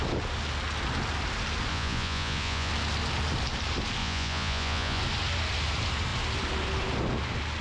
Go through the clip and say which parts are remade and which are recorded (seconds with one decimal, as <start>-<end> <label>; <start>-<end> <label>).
0.0-1.7 recorded; 1.7-2.7 remade; 2.7-4.0 recorded; 4.0-5.0 remade; 5.0-7.6 recorded